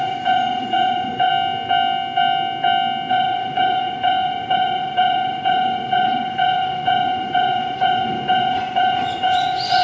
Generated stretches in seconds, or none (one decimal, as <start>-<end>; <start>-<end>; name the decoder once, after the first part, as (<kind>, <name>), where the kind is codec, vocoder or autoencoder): 0.0-1.3 (vocoder, Vocos); 3.1-9.8